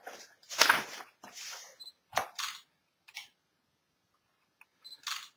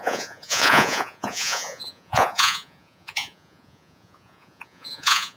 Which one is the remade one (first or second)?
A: second